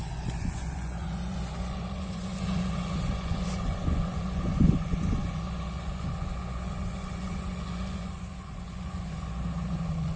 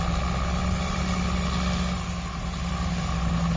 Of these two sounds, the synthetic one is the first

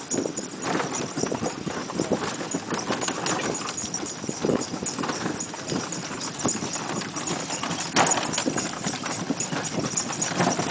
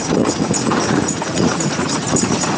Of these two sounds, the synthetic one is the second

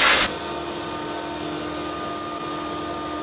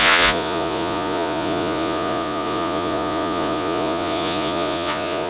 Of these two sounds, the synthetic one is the second